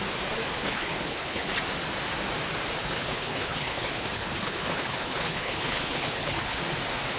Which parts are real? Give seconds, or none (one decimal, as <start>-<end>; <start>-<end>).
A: 0.0-0.6; 1.5-2.8; 6.6-7.2